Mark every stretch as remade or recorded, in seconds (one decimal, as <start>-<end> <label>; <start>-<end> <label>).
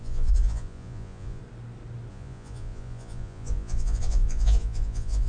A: 0.0-1.4 remade; 1.4-2.1 recorded; 2.1-5.3 remade